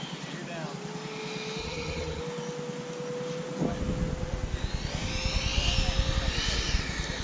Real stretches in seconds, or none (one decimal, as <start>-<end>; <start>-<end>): 0.0-1.6; 2.2-7.2